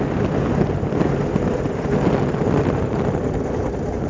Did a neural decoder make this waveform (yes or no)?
no